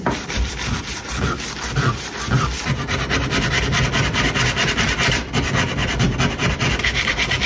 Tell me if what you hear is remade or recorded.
remade